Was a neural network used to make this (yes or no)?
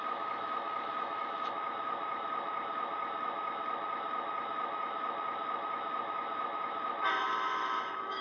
yes